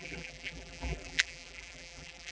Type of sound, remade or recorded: remade